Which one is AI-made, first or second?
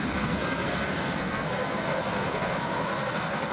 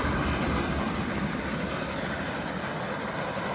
first